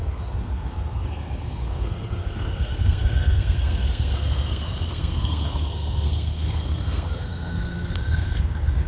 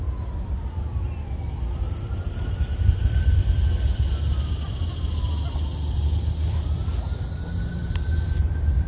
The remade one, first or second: first